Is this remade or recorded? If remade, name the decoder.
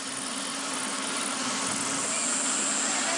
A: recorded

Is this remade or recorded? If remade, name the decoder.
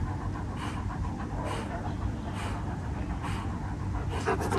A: recorded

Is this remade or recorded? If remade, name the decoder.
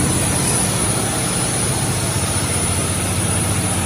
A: recorded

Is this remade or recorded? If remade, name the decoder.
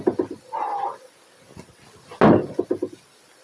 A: recorded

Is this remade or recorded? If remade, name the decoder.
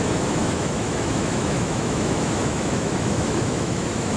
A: remade, autoencoder, DAC-VAE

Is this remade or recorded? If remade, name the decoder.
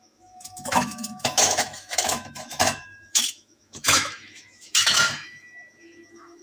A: remade, autoencoder, DAC-VAE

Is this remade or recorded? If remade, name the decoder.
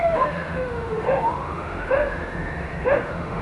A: remade, autoencoder, DAC-VAE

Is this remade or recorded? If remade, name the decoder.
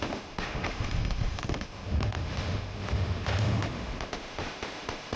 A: remade, autoencoder, DAC-VAE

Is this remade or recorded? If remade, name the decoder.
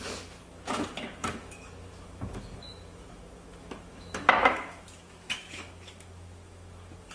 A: remade, autoencoder, DAC-VAE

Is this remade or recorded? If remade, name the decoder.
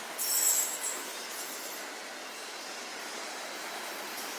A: recorded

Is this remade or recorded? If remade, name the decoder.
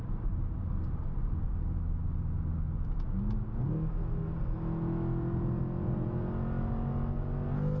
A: recorded